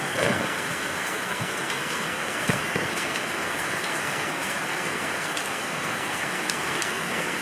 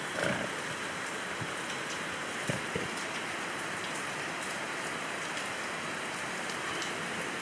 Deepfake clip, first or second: first